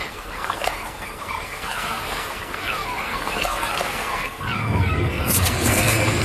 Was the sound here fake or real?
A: fake